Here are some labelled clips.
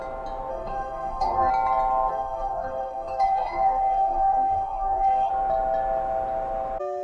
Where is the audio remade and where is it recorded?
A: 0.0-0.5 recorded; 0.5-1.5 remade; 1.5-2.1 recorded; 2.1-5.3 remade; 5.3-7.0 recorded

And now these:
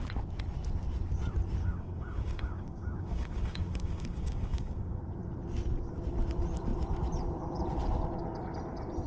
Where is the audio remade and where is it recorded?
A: 0.0-1.6 recorded; 1.6-5.0 remade; 5.0-9.1 recorded

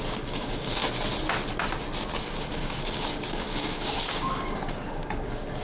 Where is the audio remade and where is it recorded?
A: 0.0-0.8 remade; 0.8-2.2 recorded; 2.2-5.6 remade

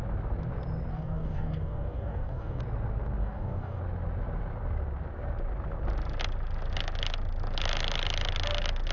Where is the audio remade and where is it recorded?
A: 0.0-0.9 recorded; 0.9-2.6 remade; 2.6-3.2 recorded; 3.2-3.8 remade; 3.8-8.9 recorded

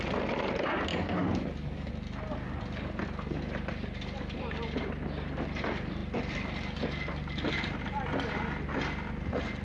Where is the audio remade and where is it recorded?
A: 0.0-0.9 recorded; 0.9-1.9 remade; 1.9-9.6 recorded

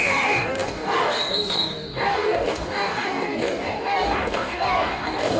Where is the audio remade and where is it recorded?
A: 0.0-5.4 remade

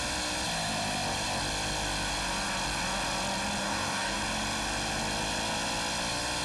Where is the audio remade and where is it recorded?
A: 0.0-3.6 recorded; 3.6-4.2 remade; 4.2-6.4 recorded